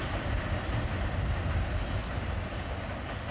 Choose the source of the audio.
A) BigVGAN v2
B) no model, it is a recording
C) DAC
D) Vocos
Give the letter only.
B